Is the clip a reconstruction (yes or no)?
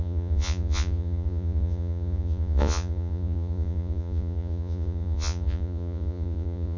yes